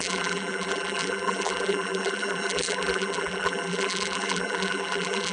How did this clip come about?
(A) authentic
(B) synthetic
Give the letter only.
B